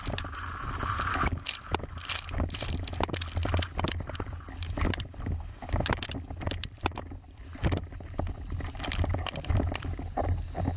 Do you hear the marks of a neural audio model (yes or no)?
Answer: no